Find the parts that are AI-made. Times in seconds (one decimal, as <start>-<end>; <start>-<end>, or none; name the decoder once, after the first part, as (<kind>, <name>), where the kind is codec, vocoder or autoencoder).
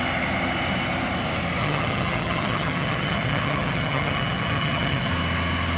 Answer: 1.6-5.1 (vocoder, HiFi-GAN)